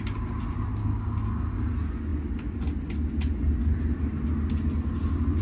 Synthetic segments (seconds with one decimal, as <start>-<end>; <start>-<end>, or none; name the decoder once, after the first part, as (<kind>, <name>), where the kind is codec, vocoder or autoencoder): 0.8-1.7 (codec, DAC)